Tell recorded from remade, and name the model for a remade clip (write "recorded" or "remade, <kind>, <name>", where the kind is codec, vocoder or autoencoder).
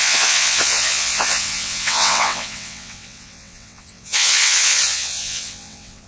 remade, vocoder, WaveNeXt